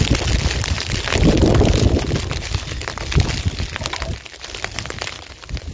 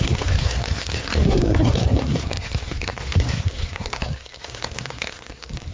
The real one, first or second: first